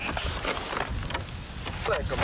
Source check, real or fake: real